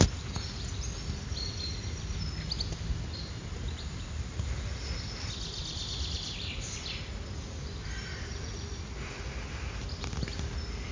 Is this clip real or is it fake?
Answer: real